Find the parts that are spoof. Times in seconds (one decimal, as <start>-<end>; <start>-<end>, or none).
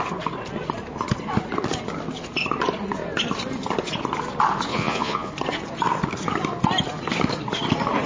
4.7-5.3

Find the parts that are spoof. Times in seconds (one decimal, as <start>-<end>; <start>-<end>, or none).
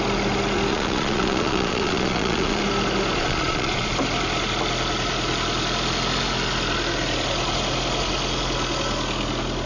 0.7-2.6; 3.2-3.9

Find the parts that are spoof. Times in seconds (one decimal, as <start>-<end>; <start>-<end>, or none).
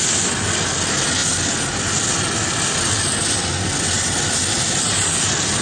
none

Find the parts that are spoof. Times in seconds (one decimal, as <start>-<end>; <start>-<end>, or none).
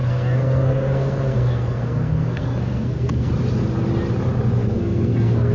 0.0-3.3; 4.6-5.5